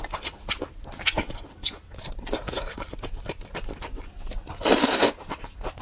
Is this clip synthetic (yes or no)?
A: no